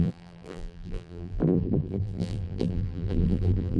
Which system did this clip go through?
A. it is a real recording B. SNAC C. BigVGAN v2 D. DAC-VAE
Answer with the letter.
C